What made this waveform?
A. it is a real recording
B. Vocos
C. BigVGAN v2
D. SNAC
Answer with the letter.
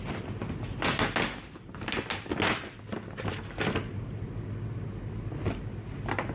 A